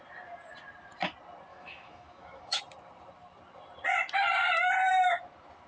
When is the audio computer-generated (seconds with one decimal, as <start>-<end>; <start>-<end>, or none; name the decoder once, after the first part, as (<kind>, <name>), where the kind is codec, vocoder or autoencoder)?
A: 1.5-2.6 (autoencoder, DAC-VAE)